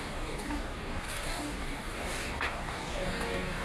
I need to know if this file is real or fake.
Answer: fake